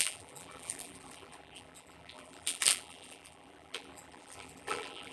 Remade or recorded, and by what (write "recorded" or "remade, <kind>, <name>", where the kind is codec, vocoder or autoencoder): remade, vocoder, BigVGAN v2